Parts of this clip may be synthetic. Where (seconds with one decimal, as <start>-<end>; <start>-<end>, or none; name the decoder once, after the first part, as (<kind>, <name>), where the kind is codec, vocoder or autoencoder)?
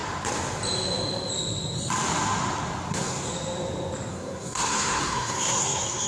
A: 2.9-3.3 (codec, SNAC); 4.1-6.1